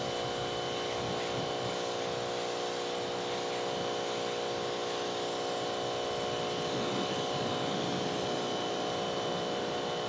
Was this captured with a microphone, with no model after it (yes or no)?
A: yes